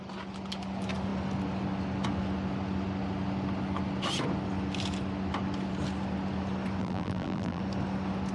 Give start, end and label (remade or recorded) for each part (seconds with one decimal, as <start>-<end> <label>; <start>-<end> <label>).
0.0-6.8 recorded; 6.8-7.6 remade; 7.6-8.3 recorded